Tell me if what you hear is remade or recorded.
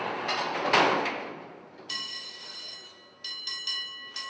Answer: recorded